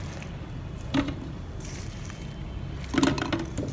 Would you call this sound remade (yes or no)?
no